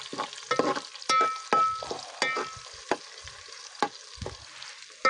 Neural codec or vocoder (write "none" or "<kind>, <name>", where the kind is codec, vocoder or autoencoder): none